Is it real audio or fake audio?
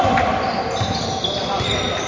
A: real